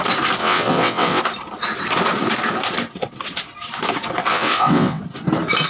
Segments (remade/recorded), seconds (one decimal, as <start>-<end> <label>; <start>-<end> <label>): 0.0-0.4 recorded; 0.4-1.2 remade; 1.2-4.3 recorded; 4.3-5.0 remade; 5.0-5.7 recorded